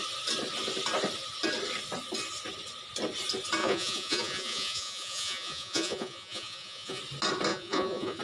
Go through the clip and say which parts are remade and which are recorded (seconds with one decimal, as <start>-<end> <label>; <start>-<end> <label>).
0.0-3.6 recorded; 3.6-7.0 remade; 7.0-7.5 recorded; 7.5-8.2 remade